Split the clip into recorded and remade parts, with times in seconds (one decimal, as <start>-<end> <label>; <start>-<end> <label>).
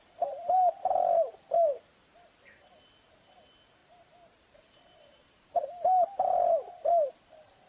0.0-3.8 recorded; 3.8-7.1 remade; 7.1-7.7 recorded